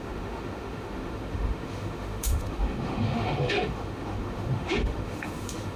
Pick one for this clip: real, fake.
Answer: fake